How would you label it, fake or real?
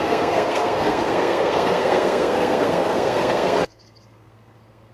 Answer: fake